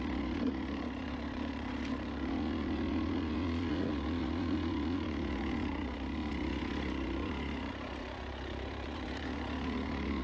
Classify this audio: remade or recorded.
remade